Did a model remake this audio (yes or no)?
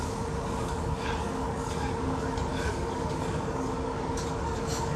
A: yes